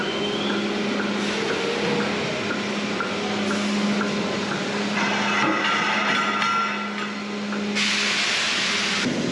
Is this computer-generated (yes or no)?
no